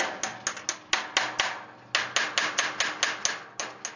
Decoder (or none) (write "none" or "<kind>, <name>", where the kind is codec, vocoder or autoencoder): none